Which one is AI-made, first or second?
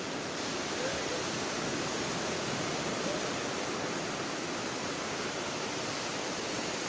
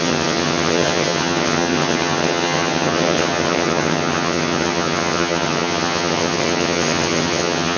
second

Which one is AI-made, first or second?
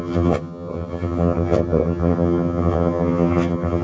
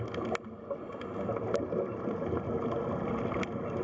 first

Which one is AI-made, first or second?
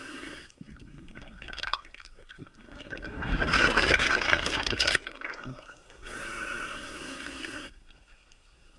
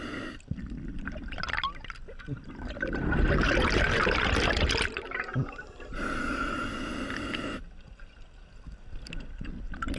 first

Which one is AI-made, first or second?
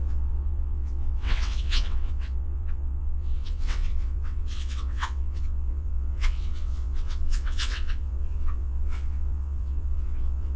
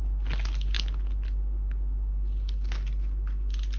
first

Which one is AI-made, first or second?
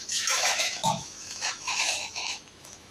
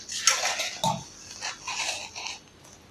first